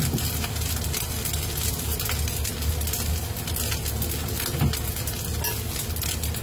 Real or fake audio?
real